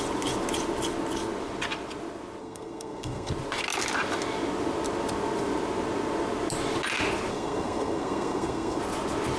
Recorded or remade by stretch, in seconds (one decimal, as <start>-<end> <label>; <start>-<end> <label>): 0.0-2.4 recorded; 2.4-3.3 remade; 3.3-7.3 recorded; 7.3-8.8 remade; 8.8-9.4 recorded